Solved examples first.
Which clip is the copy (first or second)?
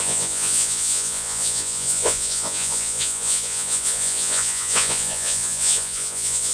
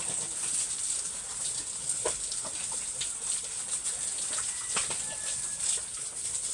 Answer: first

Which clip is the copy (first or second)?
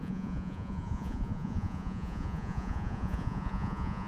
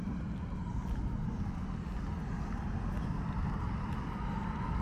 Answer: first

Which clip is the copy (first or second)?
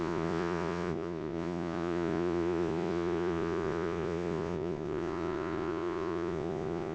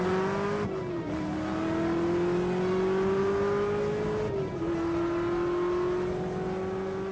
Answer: first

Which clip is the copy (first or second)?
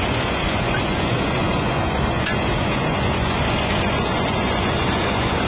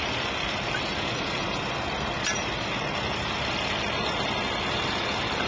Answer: first